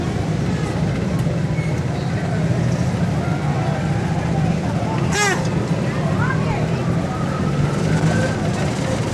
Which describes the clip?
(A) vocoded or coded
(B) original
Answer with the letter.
B